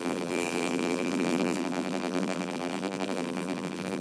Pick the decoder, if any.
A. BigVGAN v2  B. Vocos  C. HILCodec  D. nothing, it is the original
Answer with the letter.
A